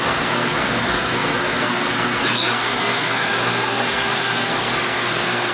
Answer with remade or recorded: remade